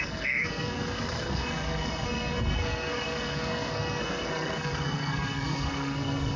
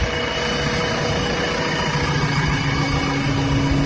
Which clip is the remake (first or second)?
first